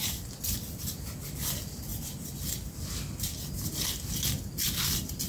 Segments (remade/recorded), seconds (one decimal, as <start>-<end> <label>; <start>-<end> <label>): 0.0-5.3 recorded